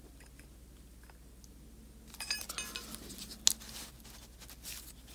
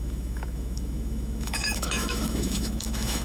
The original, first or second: first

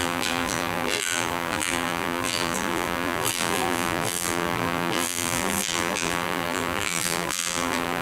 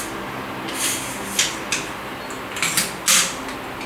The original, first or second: second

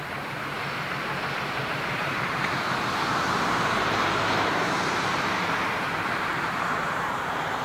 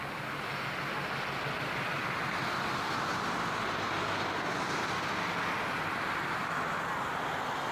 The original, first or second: second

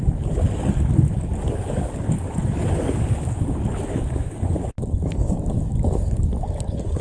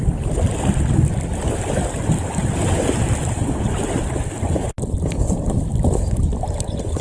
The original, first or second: second